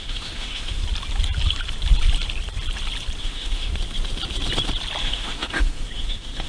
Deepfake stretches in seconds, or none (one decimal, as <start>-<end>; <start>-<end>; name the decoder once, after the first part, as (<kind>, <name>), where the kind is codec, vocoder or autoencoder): 0.0-0.8 (autoencoder, DAC-VAE); 3.2-3.7; 5.0-6.5